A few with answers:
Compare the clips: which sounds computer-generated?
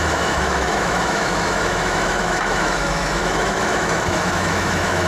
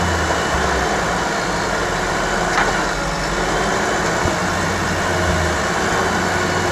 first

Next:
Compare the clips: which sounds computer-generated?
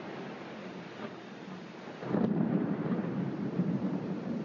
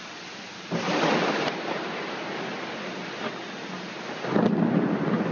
first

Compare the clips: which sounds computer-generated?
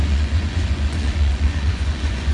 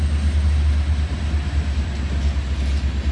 first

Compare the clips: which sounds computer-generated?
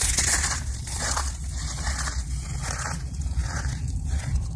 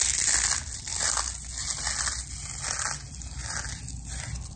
first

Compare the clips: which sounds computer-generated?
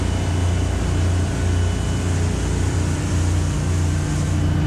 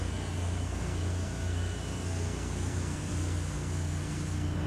second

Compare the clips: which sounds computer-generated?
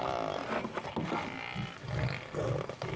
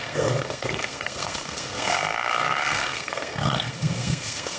second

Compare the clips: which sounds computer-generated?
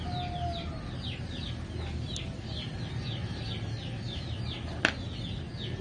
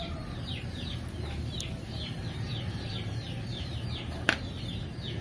second